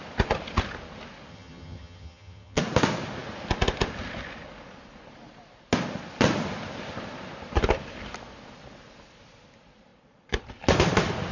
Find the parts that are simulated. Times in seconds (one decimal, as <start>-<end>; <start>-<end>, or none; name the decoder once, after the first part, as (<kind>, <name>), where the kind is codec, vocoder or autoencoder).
1.3-2.6 (vocoder, HiFi-GAN)